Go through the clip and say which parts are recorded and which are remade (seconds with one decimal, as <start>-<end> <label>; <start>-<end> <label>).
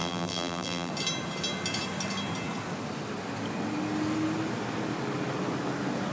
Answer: 0.0-0.9 remade; 0.9-6.1 recorded